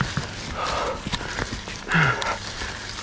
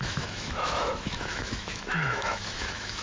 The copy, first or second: second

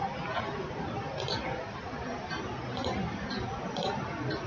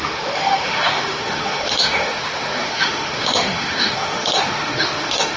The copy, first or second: second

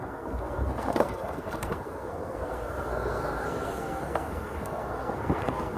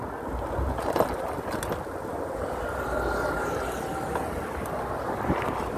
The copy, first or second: first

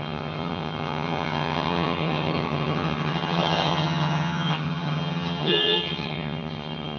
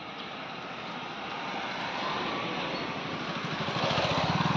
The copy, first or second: first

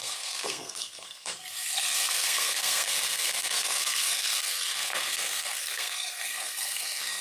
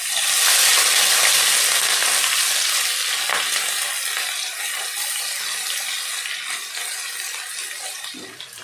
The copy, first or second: first